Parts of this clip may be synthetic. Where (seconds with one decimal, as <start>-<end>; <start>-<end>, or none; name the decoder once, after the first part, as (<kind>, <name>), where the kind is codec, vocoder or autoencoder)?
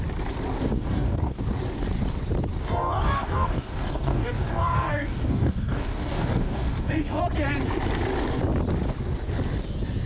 0.6-1.4 (codec, DAC); 2.6-7.2